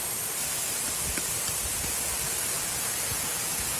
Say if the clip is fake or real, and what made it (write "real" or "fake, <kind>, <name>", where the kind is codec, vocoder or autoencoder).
real